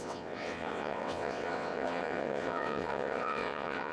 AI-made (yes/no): yes